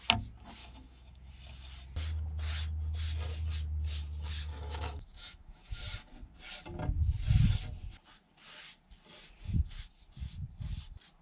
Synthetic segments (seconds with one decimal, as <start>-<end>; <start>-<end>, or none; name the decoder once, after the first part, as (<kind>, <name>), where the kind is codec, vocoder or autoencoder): 0.6-1.3 (autoencoder, DAC-VAE); 4.5-5.8